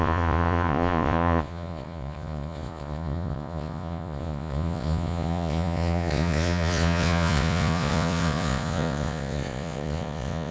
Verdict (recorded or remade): remade